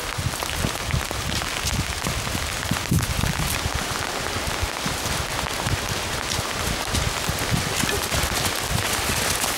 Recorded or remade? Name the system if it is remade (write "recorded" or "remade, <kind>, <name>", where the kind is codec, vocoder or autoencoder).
recorded